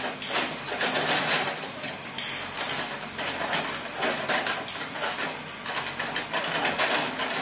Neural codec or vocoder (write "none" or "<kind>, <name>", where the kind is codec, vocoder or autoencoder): none